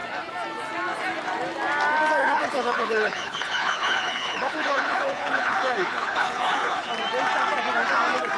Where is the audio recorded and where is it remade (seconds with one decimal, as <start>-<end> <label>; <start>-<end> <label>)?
0.0-2.2 recorded; 2.2-6.9 remade; 6.9-8.4 recorded